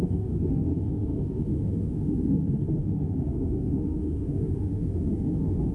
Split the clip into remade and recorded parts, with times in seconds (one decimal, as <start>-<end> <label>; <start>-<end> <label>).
0.0-5.7 remade